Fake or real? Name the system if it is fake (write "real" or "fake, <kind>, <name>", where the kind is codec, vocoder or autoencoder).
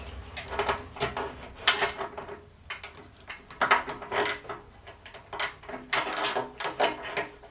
real